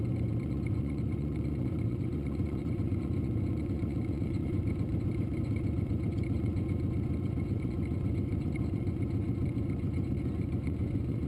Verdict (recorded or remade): remade